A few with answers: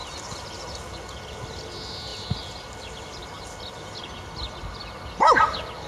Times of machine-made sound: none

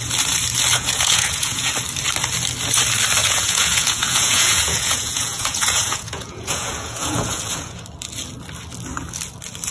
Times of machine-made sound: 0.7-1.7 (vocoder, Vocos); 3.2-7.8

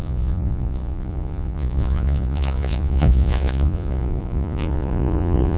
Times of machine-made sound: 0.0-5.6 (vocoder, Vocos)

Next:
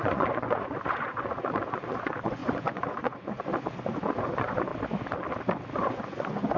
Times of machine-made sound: 0.0-3.5 (vocoder, Vocos); 4.3-4.7; 5.7-6.6

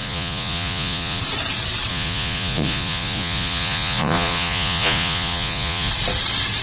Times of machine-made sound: 0.0-1.2 (vocoder, Vocos); 1.9-5.9

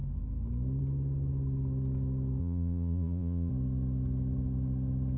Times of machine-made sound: 2.4-3.5 (vocoder, Vocos)

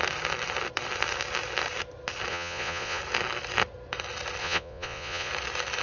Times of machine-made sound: 2.3-3.0 (vocoder, Vocos); 4.4-5.3